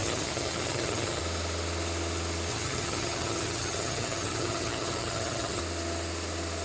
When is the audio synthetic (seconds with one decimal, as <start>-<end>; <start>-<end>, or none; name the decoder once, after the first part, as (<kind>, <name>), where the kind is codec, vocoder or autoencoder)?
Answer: 0.0-1.2 (vocoder, HiFi-GAN); 2.5-5.6